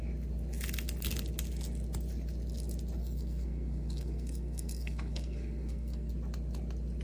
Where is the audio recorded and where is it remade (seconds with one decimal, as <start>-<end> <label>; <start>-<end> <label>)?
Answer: 0.0-3.0 recorded; 3.0-6.1 remade; 6.1-7.0 recorded